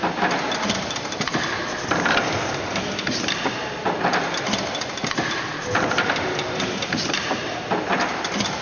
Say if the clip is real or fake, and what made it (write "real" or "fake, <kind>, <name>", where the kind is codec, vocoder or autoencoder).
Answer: real